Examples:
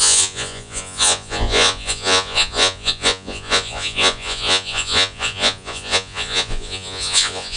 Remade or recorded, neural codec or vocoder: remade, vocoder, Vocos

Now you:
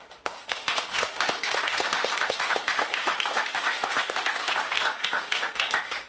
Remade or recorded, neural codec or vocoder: remade, autoencoder, DAC-VAE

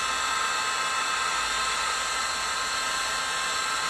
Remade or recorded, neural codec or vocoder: recorded